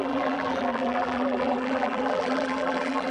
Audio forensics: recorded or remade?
remade